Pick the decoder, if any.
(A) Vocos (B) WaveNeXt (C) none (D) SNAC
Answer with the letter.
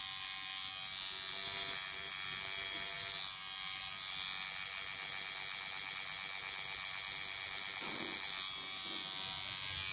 C